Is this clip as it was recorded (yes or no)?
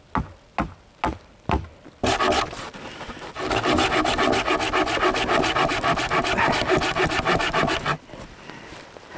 yes